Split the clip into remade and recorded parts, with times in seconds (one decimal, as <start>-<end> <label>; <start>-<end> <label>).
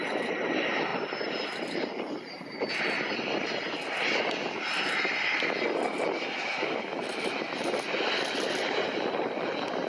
0.0-9.9 recorded